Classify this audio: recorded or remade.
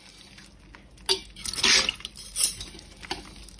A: recorded